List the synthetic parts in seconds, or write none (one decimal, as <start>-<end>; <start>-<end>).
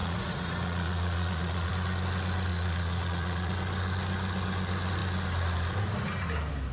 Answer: 0.0-1.7; 2.5-3.5